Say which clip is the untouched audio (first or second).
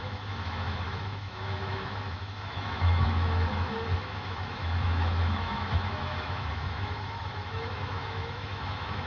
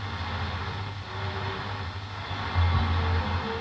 second